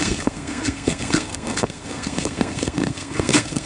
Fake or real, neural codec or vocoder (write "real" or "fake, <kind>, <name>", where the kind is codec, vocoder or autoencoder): fake, codec, SNAC